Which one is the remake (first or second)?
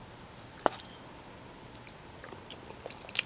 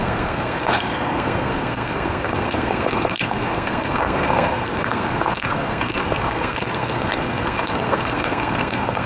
second